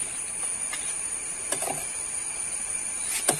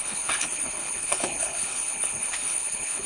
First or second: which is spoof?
second